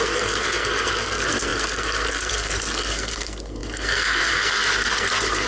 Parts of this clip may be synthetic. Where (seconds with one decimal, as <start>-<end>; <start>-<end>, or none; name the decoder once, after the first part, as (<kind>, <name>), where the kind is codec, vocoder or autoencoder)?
0.0-5.5 (codec, SNAC)